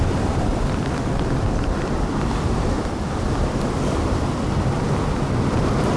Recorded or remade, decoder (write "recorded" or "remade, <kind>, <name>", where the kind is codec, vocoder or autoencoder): remade, vocoder, BigVGAN v2